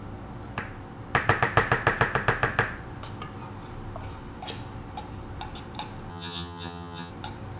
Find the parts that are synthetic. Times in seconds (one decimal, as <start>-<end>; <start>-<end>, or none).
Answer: 6.1-7.1